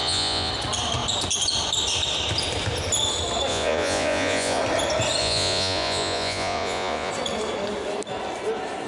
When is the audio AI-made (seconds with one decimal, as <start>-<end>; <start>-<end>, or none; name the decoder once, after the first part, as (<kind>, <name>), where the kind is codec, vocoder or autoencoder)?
0.0-0.5 (vocoder, Vocos); 3.5-4.6; 5.2-7.1